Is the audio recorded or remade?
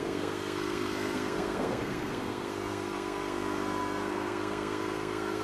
remade